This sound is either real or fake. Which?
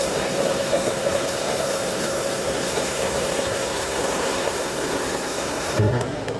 fake